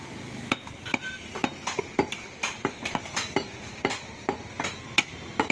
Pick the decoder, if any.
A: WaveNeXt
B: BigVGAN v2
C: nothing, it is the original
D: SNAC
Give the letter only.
C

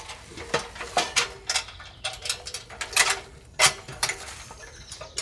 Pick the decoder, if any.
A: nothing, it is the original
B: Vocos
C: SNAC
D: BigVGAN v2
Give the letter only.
A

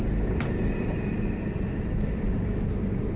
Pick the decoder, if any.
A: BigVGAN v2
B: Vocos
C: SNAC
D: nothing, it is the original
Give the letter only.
D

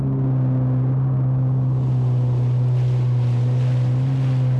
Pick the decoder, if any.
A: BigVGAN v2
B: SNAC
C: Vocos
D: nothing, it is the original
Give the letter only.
D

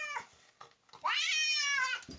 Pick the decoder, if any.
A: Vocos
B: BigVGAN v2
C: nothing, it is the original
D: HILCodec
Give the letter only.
C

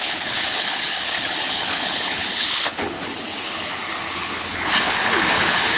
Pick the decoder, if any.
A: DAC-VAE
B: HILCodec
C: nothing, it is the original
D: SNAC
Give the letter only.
B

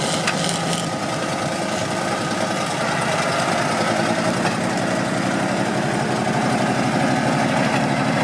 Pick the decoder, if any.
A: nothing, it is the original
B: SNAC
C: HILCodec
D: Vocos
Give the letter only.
A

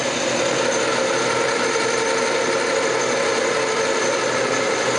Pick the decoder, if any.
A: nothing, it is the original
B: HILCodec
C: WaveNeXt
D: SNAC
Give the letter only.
A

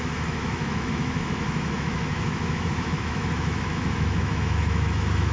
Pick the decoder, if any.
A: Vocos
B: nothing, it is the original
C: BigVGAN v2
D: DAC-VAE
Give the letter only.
D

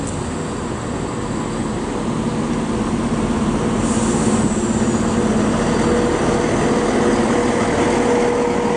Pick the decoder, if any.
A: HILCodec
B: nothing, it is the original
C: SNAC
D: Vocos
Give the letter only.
B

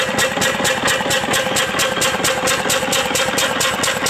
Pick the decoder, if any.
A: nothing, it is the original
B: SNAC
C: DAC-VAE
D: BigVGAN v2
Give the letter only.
A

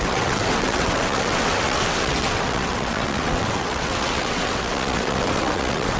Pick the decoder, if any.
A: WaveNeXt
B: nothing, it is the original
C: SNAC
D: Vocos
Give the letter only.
A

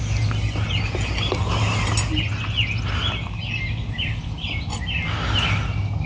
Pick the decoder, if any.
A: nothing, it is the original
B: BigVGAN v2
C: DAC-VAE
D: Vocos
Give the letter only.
A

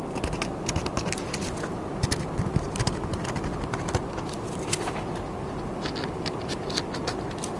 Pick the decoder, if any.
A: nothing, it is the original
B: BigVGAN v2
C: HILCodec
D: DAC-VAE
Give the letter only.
A